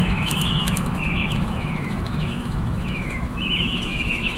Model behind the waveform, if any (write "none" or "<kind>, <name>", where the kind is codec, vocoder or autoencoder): autoencoder, DAC-VAE